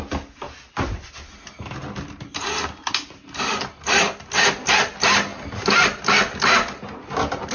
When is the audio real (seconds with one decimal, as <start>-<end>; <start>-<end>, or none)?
0.0-7.5